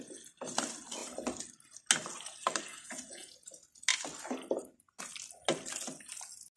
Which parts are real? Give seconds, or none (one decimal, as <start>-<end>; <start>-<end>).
0.0-2.7; 3.5-6.6